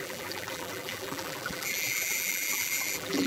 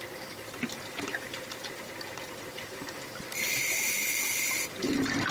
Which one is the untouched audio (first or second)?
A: second